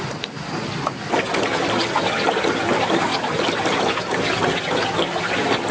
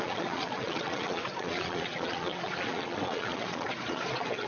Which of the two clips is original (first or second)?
first